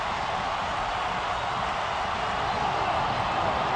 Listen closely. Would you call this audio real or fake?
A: real